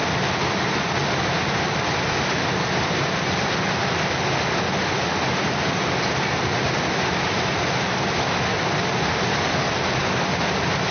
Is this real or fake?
real